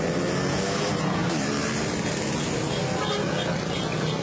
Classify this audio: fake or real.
real